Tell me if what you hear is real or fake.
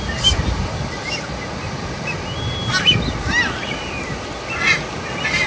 real